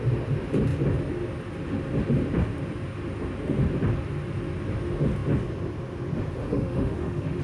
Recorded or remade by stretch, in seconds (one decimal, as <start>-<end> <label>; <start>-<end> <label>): 0.0-6.5 recorded; 6.5-7.4 remade